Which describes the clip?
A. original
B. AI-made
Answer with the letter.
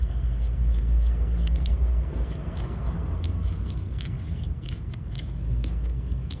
B